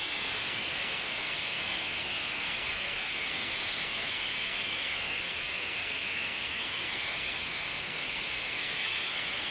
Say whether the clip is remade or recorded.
remade